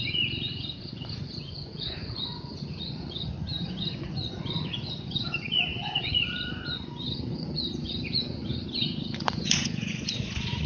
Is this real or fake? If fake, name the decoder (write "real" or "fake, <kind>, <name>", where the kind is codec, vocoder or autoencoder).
fake, vocoder, Vocos